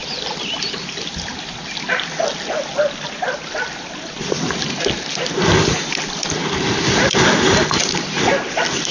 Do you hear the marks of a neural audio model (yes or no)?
no